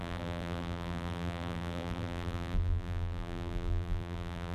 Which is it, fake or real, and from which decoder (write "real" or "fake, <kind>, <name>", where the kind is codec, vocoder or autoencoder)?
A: fake, vocoder, BigVGAN v2